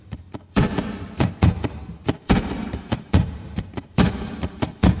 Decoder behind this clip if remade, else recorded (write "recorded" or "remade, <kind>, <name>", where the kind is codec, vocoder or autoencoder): remade, vocoder, BigVGAN v2